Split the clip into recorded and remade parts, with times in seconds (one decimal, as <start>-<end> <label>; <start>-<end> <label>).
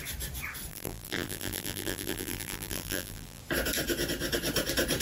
0.0-0.7 recorded; 0.7-3.4 remade; 3.4-5.0 recorded